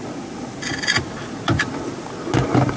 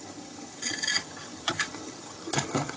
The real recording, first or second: first